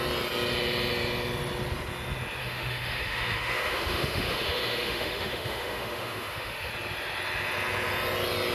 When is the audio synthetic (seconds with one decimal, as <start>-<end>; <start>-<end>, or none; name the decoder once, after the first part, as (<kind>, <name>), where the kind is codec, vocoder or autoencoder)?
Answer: 2.4-6.7 (autoencoder, DAC-VAE)